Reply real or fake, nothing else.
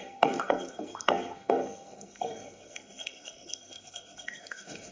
fake